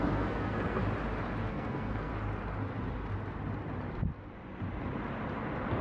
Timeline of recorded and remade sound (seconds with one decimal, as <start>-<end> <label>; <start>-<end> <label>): 0.0-0.8 remade; 0.8-1.5 recorded; 1.5-2.1 remade; 2.1-5.8 recorded